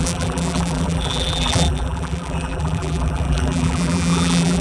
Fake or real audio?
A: fake